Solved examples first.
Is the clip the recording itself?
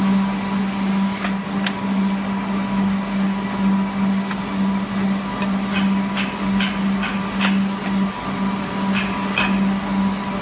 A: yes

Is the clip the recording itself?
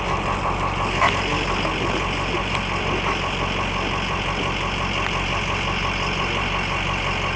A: yes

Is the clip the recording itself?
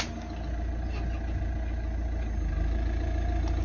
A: yes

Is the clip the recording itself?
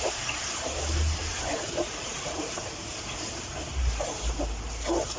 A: yes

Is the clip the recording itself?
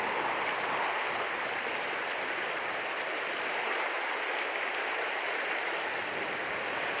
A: yes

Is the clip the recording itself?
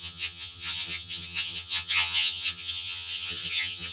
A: no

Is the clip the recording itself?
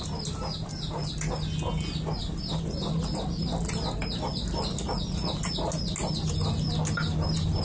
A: yes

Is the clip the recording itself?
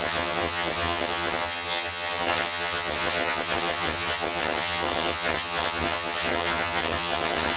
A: no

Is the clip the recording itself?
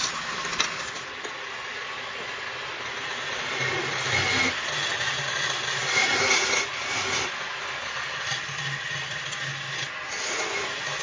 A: yes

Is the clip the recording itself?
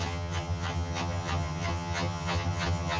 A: no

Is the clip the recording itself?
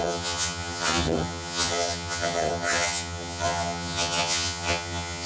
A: no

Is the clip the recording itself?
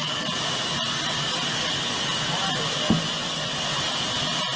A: yes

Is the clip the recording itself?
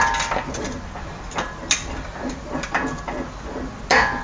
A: yes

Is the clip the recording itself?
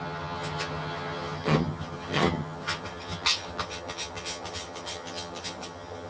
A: no